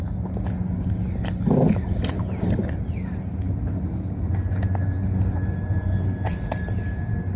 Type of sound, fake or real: real